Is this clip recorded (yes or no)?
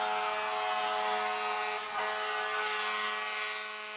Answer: yes